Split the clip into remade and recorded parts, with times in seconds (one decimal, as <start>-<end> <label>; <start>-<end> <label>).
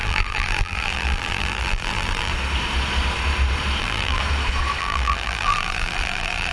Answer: 0.0-2.3 remade; 2.3-3.8 recorded; 3.8-4.2 remade; 4.2-4.8 recorded; 4.8-6.5 remade